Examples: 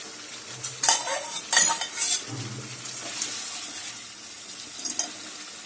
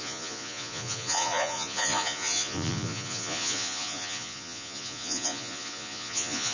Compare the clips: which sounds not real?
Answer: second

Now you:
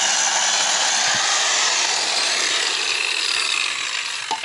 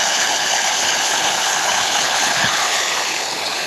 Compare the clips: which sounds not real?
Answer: second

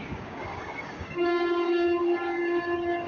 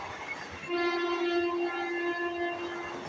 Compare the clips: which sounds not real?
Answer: first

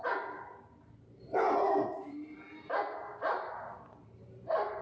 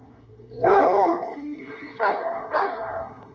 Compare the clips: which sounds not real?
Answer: second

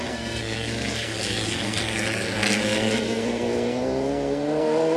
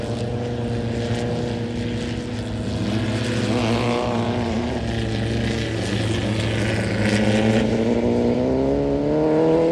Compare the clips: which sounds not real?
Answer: first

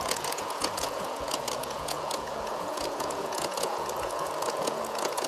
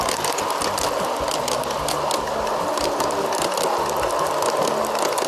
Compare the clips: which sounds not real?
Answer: first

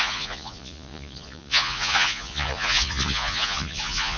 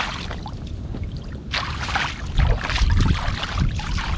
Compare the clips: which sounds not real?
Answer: first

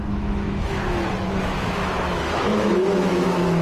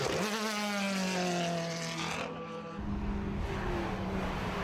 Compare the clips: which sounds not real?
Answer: first